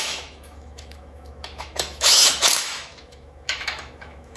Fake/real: fake